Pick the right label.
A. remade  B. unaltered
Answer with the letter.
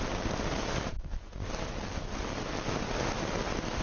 B